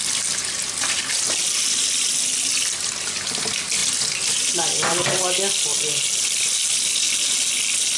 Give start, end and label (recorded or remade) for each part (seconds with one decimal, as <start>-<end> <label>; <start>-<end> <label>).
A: 0.0-8.0 recorded